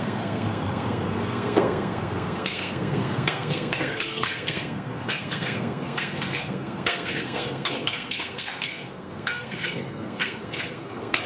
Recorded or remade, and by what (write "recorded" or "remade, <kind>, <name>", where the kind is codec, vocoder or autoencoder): remade, codec, SNAC